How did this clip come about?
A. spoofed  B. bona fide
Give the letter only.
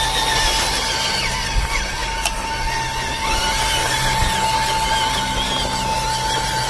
B